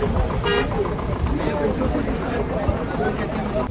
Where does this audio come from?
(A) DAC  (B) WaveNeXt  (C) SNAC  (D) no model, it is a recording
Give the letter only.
D